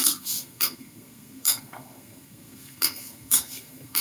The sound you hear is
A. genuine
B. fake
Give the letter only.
B